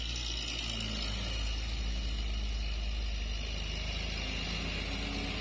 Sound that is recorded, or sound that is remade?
recorded